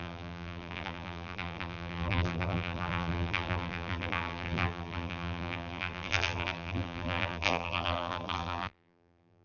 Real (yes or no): no